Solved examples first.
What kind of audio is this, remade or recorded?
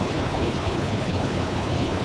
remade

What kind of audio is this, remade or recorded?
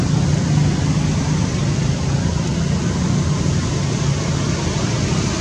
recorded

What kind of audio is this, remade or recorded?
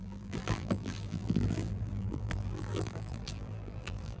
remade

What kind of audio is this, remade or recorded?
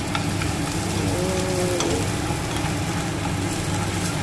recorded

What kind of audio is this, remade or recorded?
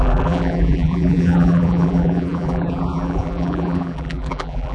remade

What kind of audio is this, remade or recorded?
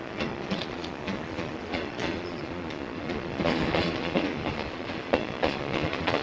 remade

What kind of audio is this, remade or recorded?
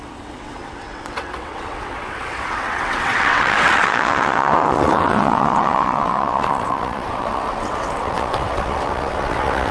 remade